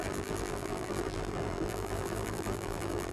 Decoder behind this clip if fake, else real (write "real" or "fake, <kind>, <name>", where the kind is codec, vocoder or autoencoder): fake, vocoder, BigVGAN v2